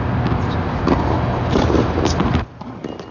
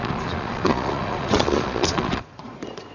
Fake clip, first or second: second